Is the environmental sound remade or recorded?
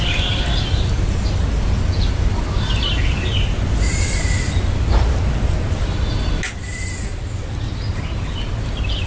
recorded